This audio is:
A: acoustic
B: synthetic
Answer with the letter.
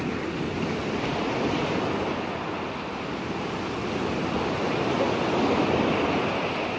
A